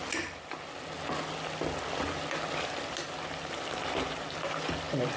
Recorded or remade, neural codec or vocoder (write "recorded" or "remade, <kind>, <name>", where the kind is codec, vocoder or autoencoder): recorded